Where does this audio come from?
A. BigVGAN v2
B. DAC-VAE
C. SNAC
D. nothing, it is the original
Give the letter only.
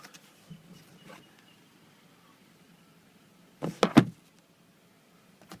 D